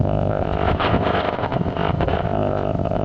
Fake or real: fake